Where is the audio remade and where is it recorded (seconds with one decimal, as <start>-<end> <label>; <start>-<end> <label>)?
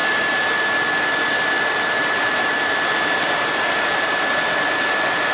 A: 0.0-5.3 recorded